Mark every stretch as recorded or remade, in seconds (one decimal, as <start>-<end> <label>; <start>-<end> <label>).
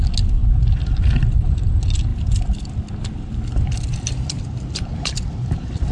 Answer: 0.0-2.1 recorded; 2.1-5.9 remade